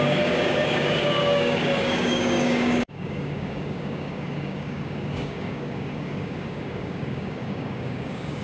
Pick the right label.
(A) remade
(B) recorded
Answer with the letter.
A